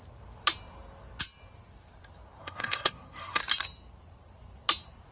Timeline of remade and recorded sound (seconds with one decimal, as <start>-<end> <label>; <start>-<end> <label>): 0.0-2.4 recorded; 2.4-3.4 remade; 3.4-5.1 recorded

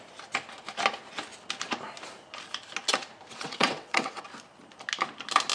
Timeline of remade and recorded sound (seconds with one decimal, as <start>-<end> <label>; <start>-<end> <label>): 0.0-3.3 recorded; 3.3-4.2 remade; 4.2-5.5 recorded

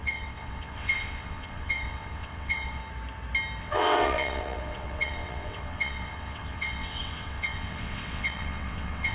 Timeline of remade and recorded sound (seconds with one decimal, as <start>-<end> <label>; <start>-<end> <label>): 0.0-2.8 remade; 2.8-3.6 recorded; 3.6-9.1 remade